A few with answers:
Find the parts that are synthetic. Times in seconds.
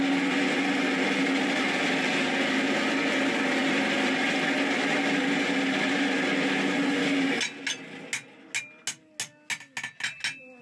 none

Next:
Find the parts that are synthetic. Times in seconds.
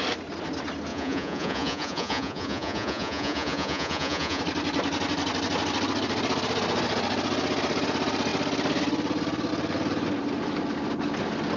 0.9-4.4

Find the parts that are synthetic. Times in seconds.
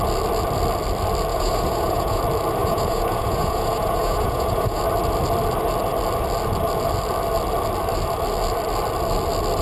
1.3-2.2; 2.6-4.8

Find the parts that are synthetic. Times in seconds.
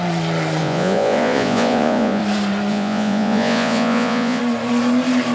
0.6-2.2; 2.7-4.4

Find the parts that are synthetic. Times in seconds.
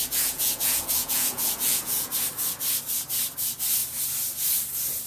0.0-2.1